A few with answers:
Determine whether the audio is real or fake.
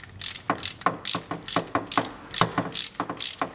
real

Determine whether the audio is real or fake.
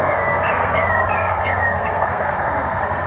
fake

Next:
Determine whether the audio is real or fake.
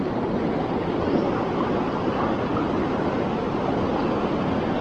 real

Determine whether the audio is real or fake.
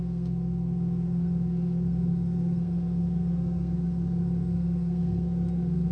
fake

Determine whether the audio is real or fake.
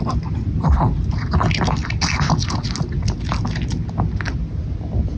real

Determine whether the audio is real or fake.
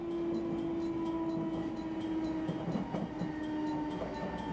real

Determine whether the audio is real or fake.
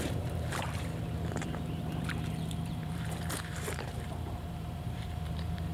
fake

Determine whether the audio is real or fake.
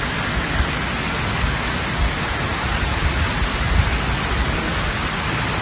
real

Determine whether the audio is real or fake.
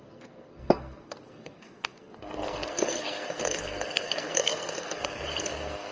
fake